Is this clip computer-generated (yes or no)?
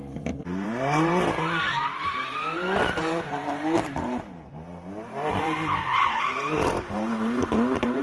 yes